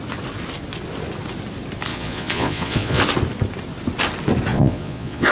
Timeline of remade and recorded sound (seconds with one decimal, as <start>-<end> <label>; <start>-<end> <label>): 0.0-1.9 recorded; 1.9-3.0 remade; 3.0-4.5 recorded; 4.5-5.3 remade